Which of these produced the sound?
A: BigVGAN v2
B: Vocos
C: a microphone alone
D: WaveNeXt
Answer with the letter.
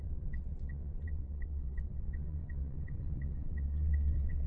D